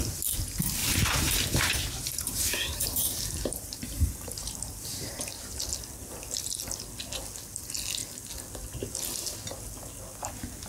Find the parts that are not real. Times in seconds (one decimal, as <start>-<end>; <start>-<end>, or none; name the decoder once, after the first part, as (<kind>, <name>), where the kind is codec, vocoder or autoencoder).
0.8-5.3 (vocoder, BigVGAN v2)